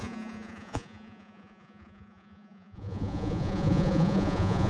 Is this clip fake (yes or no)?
yes